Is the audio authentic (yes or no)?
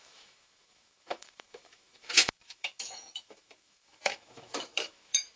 no